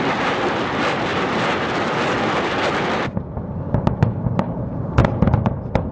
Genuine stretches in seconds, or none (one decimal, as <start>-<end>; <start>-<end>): 0.0-5.9